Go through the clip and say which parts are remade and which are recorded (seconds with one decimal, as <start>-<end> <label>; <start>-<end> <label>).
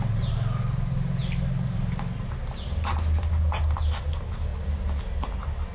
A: 0.0-5.7 recorded